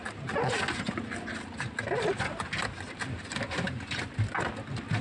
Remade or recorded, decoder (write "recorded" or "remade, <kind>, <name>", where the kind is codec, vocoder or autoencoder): recorded